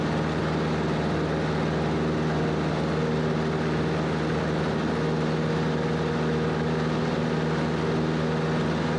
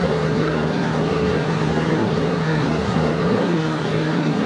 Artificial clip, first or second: second